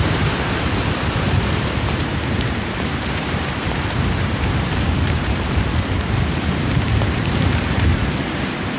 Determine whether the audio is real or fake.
fake